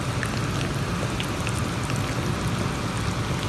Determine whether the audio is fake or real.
real